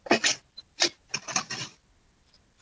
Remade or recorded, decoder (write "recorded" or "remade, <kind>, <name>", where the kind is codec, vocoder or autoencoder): recorded